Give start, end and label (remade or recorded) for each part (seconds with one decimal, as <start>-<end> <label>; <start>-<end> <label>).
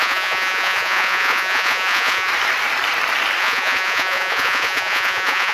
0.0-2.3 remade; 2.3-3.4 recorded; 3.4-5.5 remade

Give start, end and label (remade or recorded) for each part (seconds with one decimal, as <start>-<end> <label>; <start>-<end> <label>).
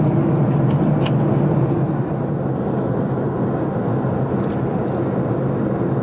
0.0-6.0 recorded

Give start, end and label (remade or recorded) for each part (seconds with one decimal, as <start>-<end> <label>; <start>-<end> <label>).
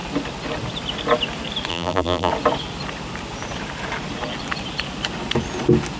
0.0-1.7 recorded; 1.7-2.3 remade; 2.3-6.0 recorded